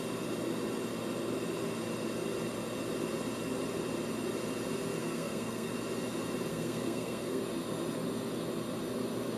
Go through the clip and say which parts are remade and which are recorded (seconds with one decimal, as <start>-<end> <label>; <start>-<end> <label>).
0.0-5.0 recorded; 5.0-5.7 remade; 5.7-6.5 recorded; 6.5-7.4 remade; 7.4-9.4 recorded